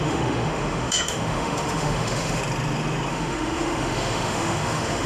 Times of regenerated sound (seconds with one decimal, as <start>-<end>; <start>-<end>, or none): 0.0-2.4; 3.1-5.1